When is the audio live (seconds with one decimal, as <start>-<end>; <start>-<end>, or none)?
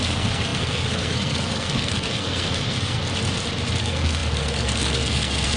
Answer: 3.0-3.8